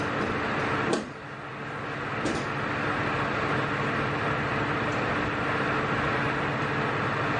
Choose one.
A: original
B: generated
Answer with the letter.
A